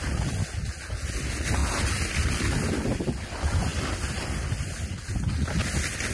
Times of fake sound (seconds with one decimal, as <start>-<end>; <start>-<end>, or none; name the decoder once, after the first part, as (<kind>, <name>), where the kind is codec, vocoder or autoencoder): none